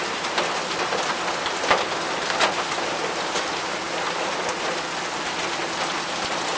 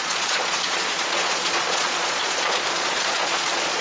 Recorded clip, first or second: first